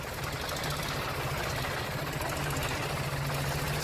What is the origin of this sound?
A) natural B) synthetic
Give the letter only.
A